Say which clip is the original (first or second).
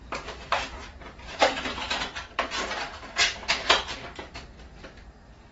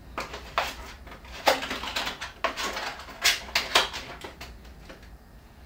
second